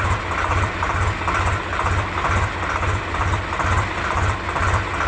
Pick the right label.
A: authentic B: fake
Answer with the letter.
A